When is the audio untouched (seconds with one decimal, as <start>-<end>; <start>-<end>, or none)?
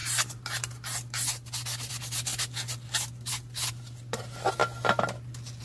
0.0-5.6